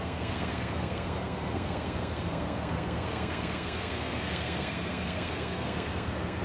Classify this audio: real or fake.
fake